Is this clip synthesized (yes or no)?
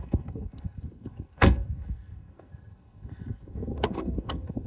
yes